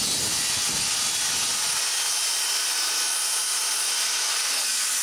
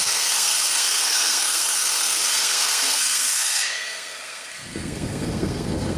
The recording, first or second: first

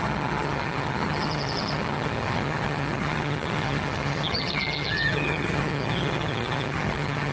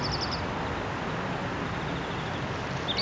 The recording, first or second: second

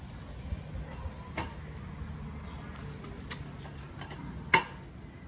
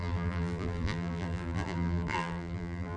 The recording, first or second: first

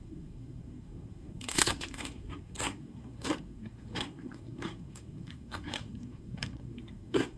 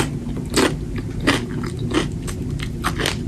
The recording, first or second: second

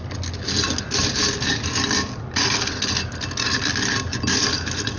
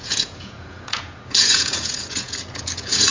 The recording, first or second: first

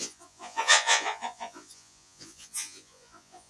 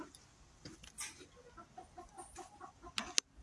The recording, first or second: second